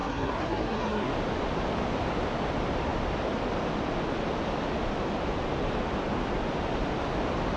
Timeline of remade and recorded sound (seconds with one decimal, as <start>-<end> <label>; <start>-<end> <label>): 0.0-1.1 remade; 1.1-7.6 recorded